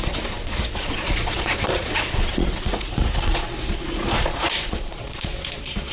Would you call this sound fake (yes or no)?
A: yes